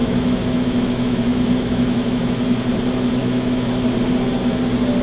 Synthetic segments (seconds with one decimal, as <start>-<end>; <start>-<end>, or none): 0.0-2.4; 3.2-3.7